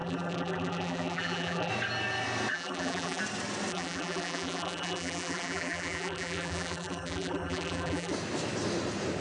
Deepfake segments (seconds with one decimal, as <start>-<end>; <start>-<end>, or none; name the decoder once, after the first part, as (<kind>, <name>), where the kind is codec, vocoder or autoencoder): 0.0-1.7 (vocoder, BigVGAN v2); 2.5-3.2; 3.7-8.1